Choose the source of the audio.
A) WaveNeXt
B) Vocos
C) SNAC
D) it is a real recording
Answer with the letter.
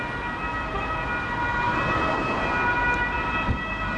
D